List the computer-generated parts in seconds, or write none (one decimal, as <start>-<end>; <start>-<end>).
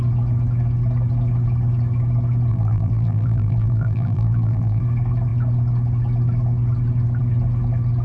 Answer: 2.5-4.8